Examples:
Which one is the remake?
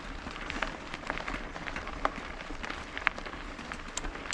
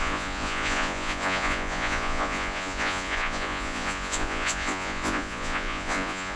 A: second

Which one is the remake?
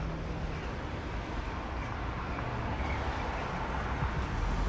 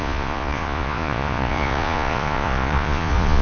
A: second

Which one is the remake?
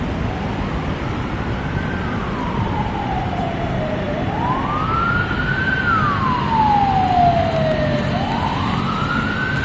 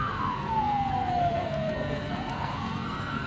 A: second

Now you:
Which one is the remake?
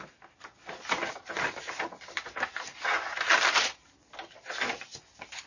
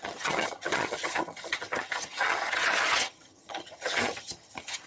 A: second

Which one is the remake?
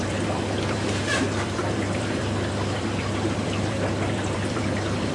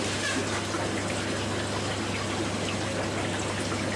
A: first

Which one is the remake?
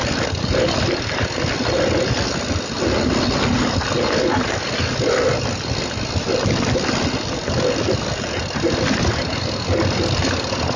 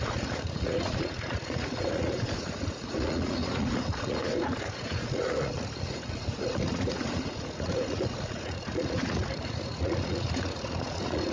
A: second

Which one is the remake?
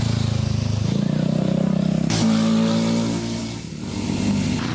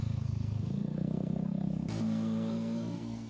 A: second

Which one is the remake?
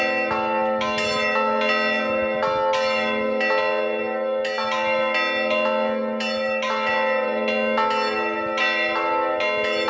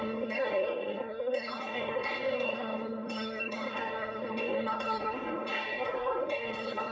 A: second